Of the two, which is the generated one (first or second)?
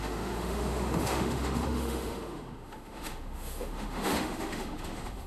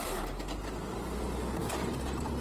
first